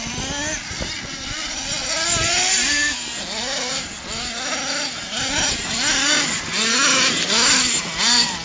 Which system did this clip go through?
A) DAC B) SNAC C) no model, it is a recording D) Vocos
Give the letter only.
C